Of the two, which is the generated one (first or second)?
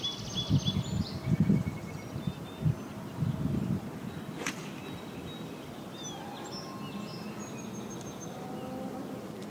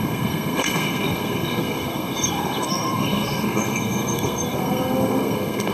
second